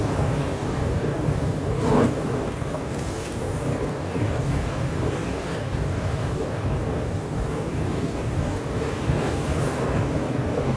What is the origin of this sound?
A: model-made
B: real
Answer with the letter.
A